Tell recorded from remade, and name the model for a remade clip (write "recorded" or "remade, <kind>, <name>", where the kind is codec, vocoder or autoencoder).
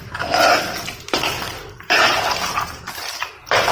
recorded